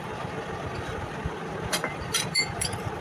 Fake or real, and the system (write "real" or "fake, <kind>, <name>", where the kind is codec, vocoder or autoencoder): fake, vocoder, BigVGAN v2